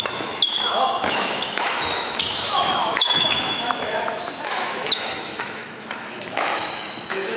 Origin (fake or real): fake